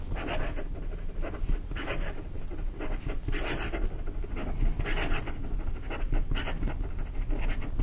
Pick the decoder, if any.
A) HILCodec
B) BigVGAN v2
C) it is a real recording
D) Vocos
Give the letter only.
C